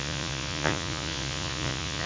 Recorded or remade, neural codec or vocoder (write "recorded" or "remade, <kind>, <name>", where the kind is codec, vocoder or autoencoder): remade, vocoder, Vocos